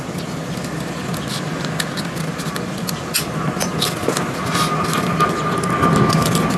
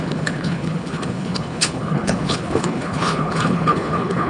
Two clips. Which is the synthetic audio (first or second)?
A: second